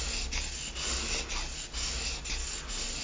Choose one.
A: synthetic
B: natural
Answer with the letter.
B